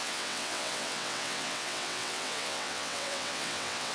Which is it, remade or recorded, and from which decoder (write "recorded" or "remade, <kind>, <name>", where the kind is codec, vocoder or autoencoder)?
remade, vocoder, WaveNeXt